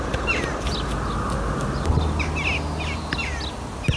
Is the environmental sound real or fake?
real